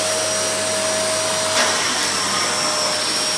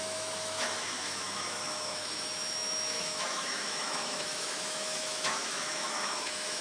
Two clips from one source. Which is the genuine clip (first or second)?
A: first